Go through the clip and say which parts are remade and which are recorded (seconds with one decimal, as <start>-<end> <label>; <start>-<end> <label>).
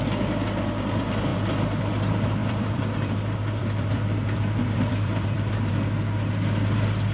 0.0-1.3 recorded; 1.3-1.8 remade; 1.8-2.4 recorded; 2.4-5.7 remade; 5.7-7.1 recorded